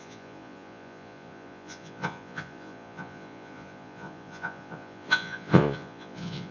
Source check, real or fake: fake